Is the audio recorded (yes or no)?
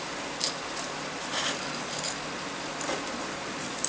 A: yes